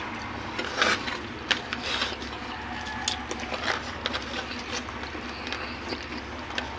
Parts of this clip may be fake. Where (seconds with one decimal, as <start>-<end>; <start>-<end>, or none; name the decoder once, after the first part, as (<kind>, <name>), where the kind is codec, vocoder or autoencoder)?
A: 0.0-2.9 (vocoder, BigVGAN v2); 3.8-6.8